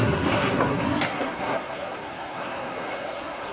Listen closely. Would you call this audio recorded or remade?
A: remade